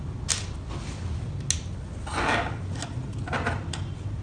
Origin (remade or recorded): recorded